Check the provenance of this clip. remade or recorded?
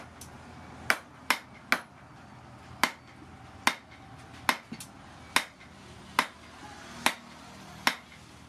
recorded